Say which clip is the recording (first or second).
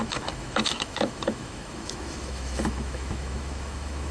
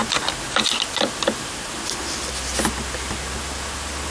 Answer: second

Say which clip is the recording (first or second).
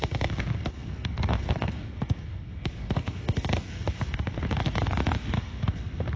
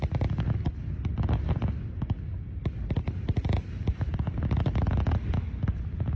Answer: second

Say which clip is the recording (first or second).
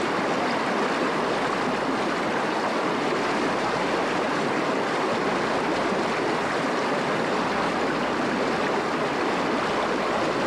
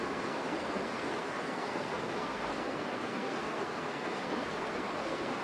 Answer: first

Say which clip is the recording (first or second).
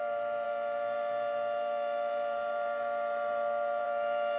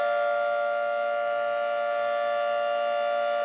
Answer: second